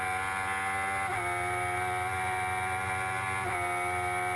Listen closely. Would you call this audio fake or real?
real